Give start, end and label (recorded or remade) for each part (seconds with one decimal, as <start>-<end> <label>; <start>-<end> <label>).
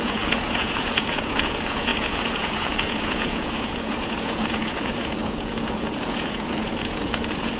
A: 0.0-7.6 remade